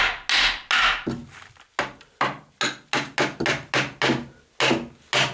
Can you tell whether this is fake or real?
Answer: real